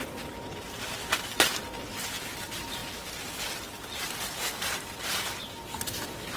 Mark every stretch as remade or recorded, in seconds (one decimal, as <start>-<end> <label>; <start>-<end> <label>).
0.0-1.3 remade; 1.3-2.2 recorded; 2.2-2.8 remade; 2.8-5.5 recorded; 5.5-6.4 remade